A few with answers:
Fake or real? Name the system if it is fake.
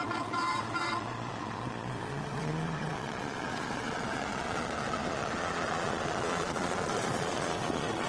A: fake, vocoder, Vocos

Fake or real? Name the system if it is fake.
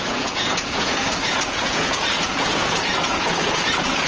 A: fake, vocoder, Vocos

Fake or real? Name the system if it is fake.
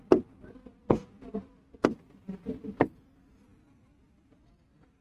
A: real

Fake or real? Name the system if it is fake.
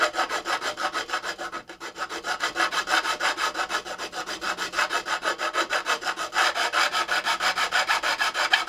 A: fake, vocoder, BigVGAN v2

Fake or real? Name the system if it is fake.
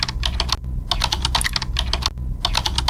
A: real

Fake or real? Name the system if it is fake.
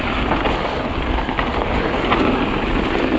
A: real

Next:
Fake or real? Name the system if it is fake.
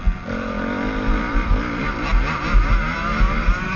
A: real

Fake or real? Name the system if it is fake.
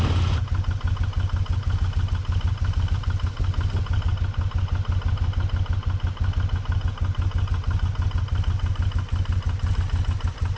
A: real